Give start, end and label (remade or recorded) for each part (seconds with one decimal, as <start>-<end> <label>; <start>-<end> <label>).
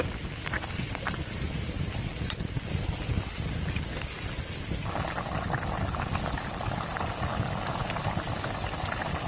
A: 0.0-9.3 recorded